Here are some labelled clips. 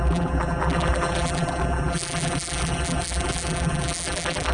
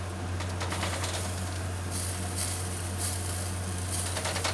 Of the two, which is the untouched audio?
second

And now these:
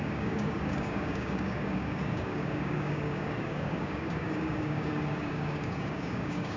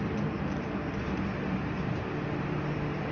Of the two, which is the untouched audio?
second